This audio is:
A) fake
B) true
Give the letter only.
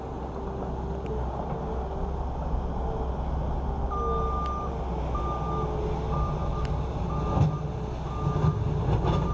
B